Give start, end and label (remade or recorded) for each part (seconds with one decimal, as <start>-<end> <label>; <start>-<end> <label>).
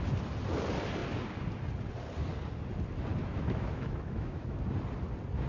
0.0-3.2 recorded; 3.2-4.6 remade; 4.6-5.5 recorded